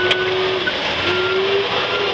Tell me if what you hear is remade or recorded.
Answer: recorded